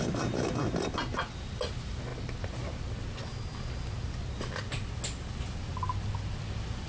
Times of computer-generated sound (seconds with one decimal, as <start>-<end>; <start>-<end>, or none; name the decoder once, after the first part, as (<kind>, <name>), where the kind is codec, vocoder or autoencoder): none